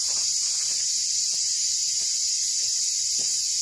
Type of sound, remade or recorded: remade